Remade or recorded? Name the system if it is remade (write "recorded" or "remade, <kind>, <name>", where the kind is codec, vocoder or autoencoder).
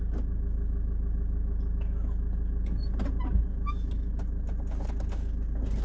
recorded